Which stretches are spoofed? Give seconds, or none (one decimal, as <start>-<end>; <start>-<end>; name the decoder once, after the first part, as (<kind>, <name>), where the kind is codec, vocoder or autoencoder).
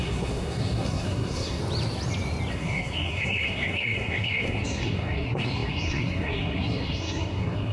0.0-1.6 (codec, SNAC); 2.5-7.7